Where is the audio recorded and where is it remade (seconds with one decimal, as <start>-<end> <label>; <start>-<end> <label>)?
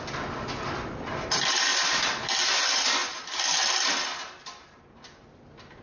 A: 0.0-5.8 recorded